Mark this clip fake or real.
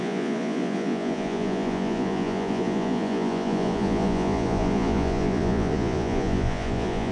fake